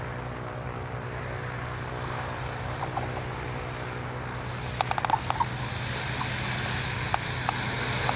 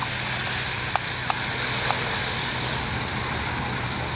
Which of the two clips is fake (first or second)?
first